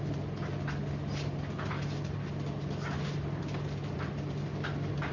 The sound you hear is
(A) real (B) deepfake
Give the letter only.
A